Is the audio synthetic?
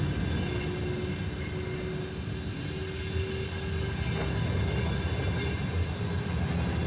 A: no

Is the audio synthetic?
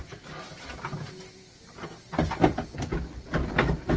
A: no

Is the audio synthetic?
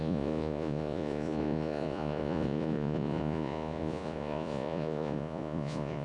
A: yes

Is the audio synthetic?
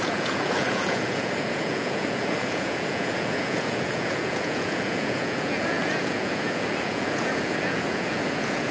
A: yes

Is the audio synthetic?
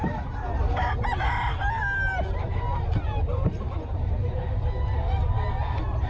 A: no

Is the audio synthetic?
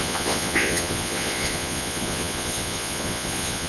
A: yes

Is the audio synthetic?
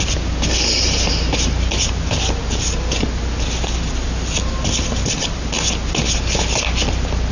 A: no